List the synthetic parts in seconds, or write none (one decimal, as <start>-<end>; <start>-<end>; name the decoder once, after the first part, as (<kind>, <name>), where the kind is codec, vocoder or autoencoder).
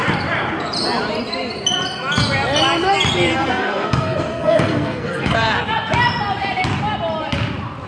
3.3-5.6 (codec, SNAC)